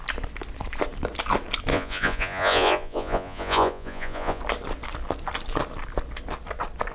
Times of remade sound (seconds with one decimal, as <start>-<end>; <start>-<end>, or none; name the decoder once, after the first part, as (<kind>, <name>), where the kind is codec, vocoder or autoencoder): 1.7-4.4 (vocoder, Vocos)